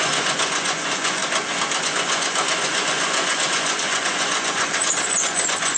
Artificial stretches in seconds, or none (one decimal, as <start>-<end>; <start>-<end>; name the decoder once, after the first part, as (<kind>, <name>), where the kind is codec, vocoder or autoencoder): 0.0-1.2 (vocoder, Vocos); 1.8-5.8